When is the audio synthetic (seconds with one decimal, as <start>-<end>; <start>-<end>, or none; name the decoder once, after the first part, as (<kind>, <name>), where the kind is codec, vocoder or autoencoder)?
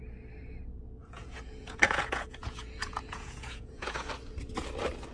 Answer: 1.0-4.1 (vocoder, Vocos)